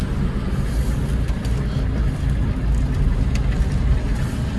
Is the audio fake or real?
real